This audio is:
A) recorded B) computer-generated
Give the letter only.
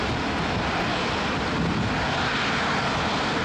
A